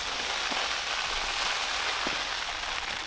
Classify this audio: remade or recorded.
recorded